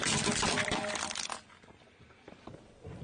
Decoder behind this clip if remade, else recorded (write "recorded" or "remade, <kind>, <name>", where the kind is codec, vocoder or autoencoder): recorded